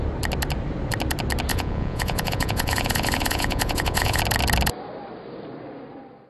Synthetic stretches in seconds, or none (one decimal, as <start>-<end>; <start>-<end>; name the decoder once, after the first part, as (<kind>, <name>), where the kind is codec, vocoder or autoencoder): 1.5-4.2 (vocoder, Vocos)